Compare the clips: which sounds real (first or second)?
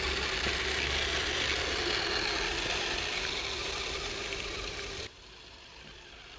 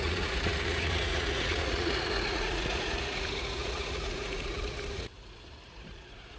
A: first